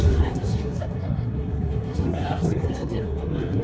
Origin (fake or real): fake